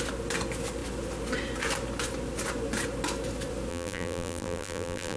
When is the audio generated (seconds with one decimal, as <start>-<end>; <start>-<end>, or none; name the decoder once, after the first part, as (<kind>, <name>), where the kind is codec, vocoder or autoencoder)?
3.7-5.2 (vocoder, BigVGAN v2)